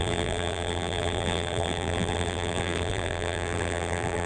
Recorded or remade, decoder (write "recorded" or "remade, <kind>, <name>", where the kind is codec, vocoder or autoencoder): remade, vocoder, BigVGAN v2